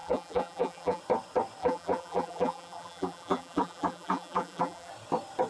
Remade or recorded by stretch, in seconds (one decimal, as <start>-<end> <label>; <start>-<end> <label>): 0.0-1.0 remade; 1.0-1.6 recorded; 1.6-4.9 remade; 4.9-5.5 recorded